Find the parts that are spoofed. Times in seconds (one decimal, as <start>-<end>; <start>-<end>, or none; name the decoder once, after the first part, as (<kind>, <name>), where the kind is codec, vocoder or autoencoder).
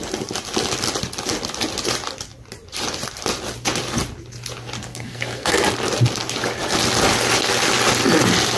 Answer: 4.9-5.6 (codec, SNAC)